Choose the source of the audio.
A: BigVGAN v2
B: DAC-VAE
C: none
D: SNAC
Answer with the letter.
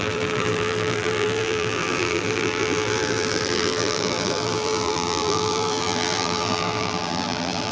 A